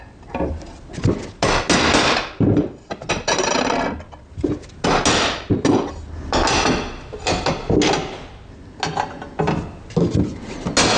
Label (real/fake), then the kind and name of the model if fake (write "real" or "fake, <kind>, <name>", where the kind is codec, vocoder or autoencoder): real